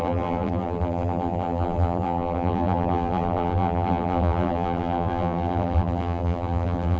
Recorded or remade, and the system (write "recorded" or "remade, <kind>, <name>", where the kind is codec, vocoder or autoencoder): remade, vocoder, BigVGAN v2